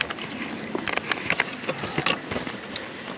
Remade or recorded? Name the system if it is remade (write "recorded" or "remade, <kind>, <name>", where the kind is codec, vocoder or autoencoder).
recorded